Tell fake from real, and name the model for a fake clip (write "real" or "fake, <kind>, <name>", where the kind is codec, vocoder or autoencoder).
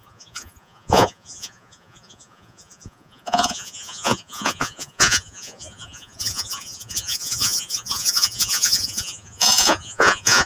fake, vocoder, Vocos